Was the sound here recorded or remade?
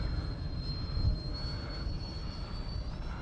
recorded